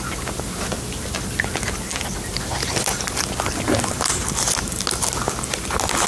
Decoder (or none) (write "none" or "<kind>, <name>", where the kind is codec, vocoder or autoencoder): none